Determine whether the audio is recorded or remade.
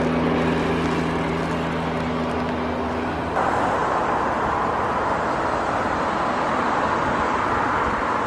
recorded